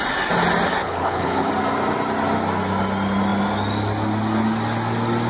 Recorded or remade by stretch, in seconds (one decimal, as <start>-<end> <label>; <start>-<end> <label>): 0.0-0.8 recorded; 0.8-1.5 remade; 1.5-5.3 recorded